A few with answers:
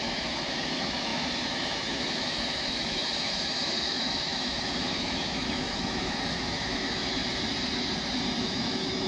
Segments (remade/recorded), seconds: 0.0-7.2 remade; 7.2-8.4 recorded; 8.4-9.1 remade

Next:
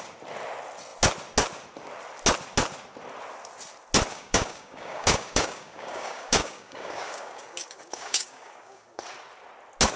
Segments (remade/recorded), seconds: 0.0-4.1 recorded; 4.1-9.0 remade; 9.0-10.0 recorded

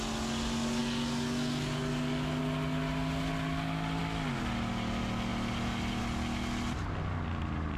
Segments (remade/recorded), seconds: 0.0-7.8 recorded

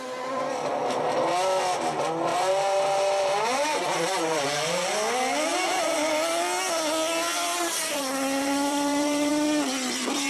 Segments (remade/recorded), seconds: 0.0-2.3 recorded; 2.3-4.4 remade; 4.4-5.5 recorded; 5.5-6.1 remade; 6.1-7.5 recorded; 7.5-9.3 remade; 9.3-10.3 recorded